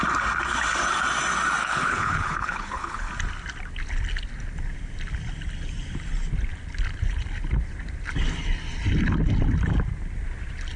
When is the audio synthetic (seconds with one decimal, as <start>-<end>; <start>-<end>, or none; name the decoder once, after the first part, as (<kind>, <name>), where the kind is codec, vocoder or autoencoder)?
1.6-3.1 (codec, HILCodec)